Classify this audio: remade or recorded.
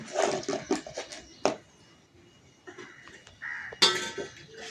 recorded